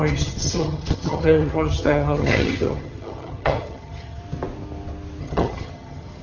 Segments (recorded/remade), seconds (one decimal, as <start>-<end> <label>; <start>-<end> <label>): 0.0-4.2 remade; 4.2-5.2 recorded; 5.2-6.2 remade